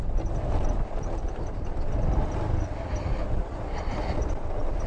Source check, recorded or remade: recorded